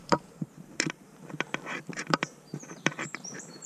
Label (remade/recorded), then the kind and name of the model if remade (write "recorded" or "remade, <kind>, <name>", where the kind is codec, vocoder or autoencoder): remade, vocoder, BigVGAN v2